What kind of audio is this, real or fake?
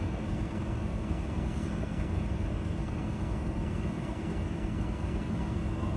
fake